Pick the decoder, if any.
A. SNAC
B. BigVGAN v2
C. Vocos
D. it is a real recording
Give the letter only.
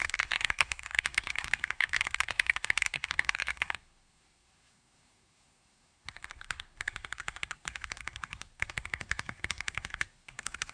A